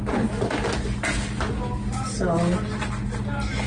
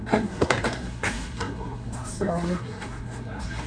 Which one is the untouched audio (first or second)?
first